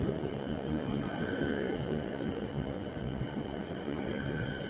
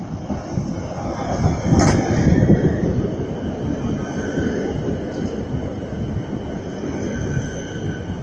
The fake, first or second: first